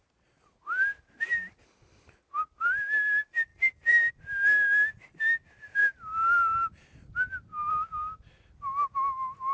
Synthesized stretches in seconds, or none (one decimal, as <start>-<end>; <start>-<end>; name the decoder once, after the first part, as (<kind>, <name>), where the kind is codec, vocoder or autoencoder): 3.5-4.1 (vocoder, BigVGAN v2)